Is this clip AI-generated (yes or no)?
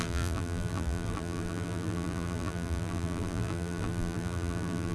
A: yes